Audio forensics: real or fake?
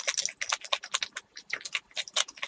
real